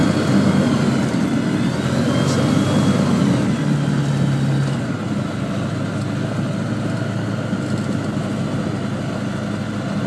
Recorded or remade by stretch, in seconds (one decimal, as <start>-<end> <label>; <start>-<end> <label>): 0.0-10.1 recorded